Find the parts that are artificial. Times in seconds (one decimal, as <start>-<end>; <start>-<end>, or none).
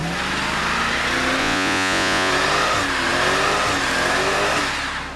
1.4-2.3